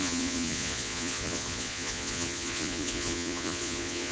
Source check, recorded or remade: remade